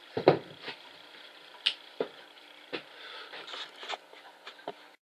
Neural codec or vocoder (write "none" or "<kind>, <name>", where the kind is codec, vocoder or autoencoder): none